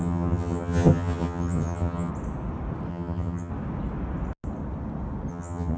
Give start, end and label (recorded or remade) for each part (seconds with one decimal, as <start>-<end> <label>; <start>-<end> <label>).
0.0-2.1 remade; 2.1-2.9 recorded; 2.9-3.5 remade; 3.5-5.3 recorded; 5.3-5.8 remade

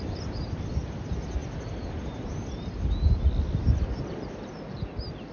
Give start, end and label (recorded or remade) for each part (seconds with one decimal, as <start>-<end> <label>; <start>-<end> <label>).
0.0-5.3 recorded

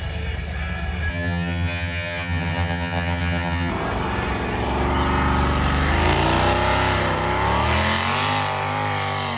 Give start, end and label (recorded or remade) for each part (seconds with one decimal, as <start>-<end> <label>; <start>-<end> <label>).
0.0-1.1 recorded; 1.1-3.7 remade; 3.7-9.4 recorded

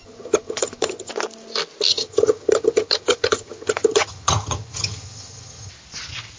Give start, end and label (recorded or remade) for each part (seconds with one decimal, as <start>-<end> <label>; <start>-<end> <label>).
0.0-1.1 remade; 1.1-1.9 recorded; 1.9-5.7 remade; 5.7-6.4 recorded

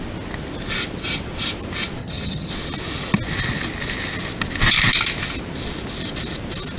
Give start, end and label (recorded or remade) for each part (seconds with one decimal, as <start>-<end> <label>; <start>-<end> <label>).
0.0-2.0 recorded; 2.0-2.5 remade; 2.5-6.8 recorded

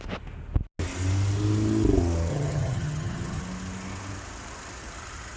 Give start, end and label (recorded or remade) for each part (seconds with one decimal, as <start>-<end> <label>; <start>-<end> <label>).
0.0-2.3 recorded; 2.3-3.4 remade; 3.4-5.4 recorded

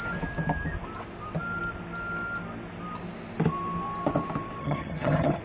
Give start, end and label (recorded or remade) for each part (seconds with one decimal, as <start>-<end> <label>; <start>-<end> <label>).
0.0-4.6 recorded; 4.6-5.4 remade

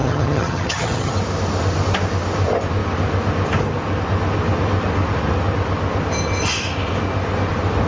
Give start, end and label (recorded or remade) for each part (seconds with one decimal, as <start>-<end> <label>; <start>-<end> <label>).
0.0-1.1 remade; 1.1-7.9 recorded